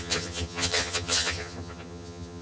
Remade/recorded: remade